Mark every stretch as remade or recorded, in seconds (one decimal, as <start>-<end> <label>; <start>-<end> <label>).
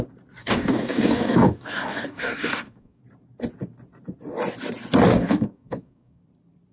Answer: 0.0-0.4 recorded; 0.4-3.0 remade; 3.0-5.1 recorded; 5.1-6.2 remade; 6.2-6.7 recorded